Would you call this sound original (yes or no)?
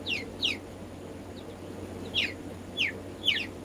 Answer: yes